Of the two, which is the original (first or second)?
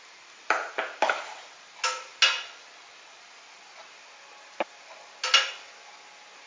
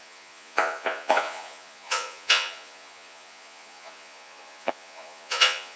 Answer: first